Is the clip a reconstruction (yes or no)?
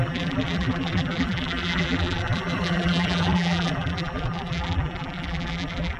yes